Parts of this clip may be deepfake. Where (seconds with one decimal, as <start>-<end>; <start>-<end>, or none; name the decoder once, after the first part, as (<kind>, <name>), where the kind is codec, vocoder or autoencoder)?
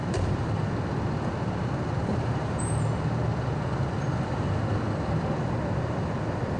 0.0-0.7 (vocoder, BigVGAN v2); 2.1-2.7